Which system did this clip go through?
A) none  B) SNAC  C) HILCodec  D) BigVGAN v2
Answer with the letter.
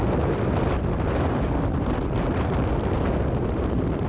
D